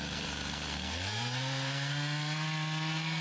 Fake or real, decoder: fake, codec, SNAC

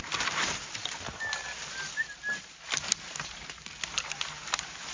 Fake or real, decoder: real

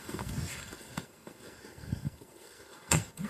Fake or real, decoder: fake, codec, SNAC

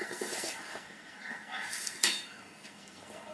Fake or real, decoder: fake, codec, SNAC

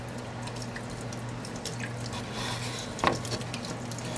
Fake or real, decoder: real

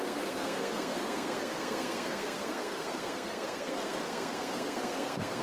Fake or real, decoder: fake, codec, SNAC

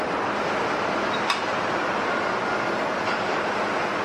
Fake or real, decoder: real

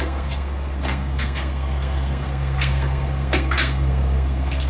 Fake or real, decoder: fake, codec, SNAC